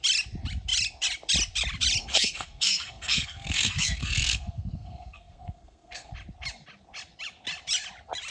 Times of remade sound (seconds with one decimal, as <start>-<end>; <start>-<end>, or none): 2.0-6.1